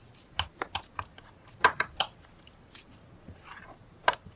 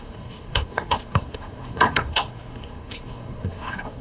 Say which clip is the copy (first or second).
second